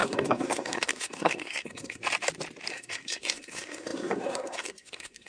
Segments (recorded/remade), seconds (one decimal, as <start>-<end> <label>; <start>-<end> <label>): 0.0-2.0 remade; 2.0-2.7 recorded; 2.7-5.3 remade